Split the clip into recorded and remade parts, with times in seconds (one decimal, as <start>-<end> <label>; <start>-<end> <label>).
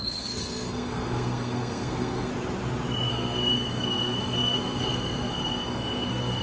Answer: 0.0-2.3 remade; 2.3-3.1 recorded; 3.1-6.4 remade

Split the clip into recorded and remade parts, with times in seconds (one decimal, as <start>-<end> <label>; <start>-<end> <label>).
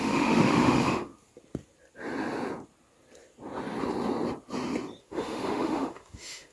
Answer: 0.0-1.1 remade; 1.1-5.0 recorded; 5.0-6.5 remade